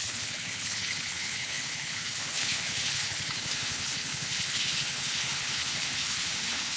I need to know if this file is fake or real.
fake